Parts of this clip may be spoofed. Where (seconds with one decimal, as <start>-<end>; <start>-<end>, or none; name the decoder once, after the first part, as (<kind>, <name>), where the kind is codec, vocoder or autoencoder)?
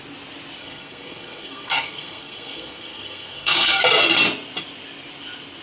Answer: 0.6-3.8 (codec, SNAC)